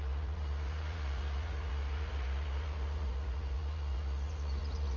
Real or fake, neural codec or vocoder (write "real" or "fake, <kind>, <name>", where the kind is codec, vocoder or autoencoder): fake, vocoder, Vocos